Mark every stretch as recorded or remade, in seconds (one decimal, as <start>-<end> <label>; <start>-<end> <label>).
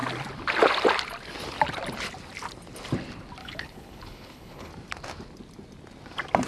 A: 0.0-3.4 recorded; 3.4-4.7 remade; 4.7-6.5 recorded